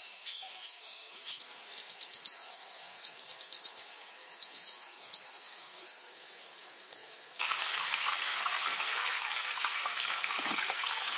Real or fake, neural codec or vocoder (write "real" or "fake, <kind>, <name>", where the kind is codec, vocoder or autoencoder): fake, codec, SNAC